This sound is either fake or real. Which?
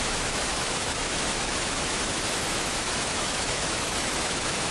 fake